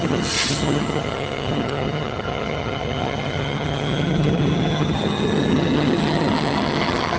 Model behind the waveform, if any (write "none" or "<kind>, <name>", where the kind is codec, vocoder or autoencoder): vocoder, HiFi-GAN